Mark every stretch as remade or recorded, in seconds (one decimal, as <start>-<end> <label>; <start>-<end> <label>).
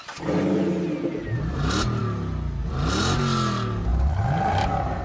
0.0-5.0 recorded